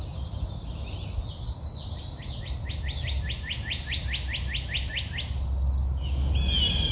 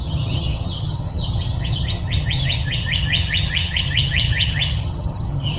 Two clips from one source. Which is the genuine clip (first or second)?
first